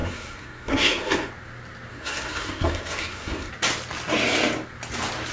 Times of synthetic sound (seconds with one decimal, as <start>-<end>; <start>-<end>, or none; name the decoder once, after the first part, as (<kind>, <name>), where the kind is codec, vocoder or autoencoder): 0.0-1.3 (codec, SNAC); 1.9-3.5